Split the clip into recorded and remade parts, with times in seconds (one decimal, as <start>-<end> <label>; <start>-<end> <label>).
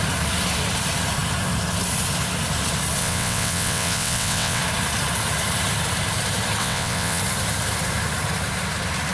0.0-3.0 recorded; 3.0-4.6 remade; 4.6-6.6 recorded; 6.6-7.2 remade; 7.2-9.1 recorded